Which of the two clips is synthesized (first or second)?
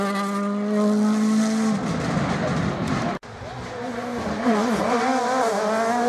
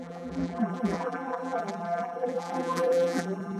second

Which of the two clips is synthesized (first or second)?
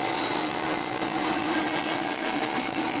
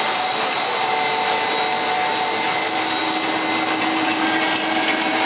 first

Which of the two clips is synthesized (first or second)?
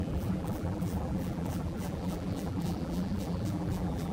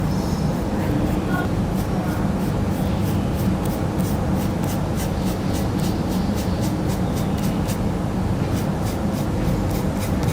first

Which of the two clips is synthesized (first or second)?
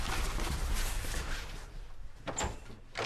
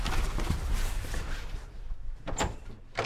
second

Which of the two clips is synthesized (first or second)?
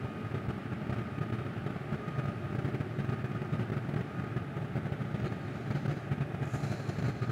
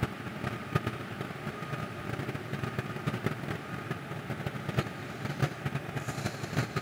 second